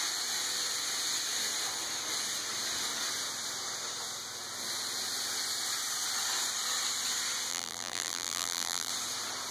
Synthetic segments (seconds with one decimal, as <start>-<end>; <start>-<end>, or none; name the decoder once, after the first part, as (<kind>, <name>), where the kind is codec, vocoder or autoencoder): 7.5-8.9 (vocoder, BigVGAN v2)